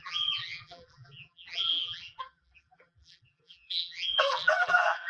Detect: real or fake fake